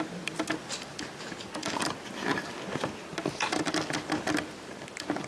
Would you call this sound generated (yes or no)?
no